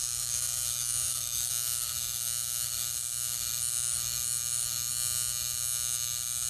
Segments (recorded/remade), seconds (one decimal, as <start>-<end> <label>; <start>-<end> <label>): 0.0-1.5 remade; 1.5-6.5 recorded